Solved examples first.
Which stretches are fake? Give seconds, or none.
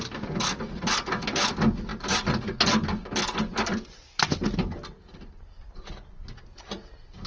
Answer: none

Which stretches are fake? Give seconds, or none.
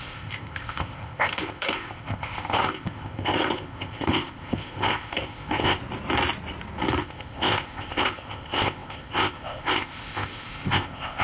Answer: 0.0-5.8 (codec, ZipCodec); 7.0-11.2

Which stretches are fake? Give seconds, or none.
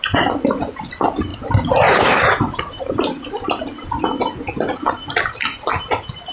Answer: none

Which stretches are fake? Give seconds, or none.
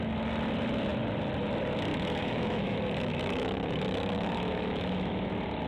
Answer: 1.9-5.3 (autoencoder, DAC-VAE)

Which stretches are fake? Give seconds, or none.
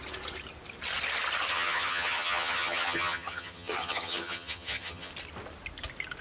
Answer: 1.5-5.1 (vocoder, HiFi-GAN)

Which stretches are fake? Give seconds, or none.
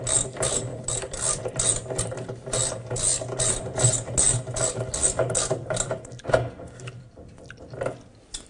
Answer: 0.7-1.4 (vocoder, BigVGAN v2)